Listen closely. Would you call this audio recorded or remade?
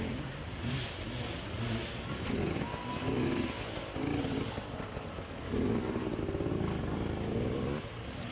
recorded